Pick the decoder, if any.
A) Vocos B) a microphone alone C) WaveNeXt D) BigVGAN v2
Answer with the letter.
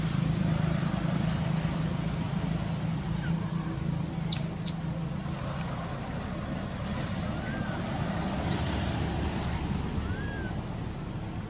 B